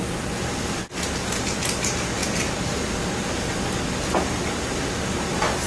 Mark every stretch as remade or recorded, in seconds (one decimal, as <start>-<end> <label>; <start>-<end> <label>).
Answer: 0.0-5.7 recorded